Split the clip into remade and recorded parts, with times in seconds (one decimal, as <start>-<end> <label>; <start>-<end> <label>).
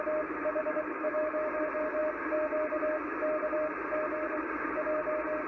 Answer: 0.0-0.6 recorded; 0.6-1.3 remade; 1.3-5.5 recorded